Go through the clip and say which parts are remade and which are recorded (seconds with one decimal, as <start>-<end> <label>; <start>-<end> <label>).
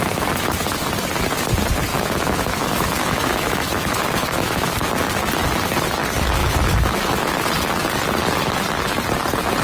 0.0-1.9 recorded; 1.9-5.1 remade; 5.1-6.4 recorded; 6.4-7.3 remade; 7.3-9.6 recorded